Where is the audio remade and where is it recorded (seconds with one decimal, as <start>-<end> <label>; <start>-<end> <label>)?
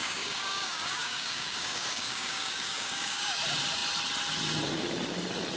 0.0-3.4 remade; 3.4-5.6 recorded